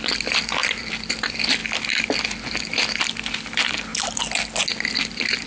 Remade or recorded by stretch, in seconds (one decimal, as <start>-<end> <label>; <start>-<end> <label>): 0.0-1.6 remade; 1.6-3.0 recorded; 3.0-3.9 remade; 3.9-5.5 recorded